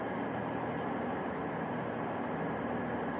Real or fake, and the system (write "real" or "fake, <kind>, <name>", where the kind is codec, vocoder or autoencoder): real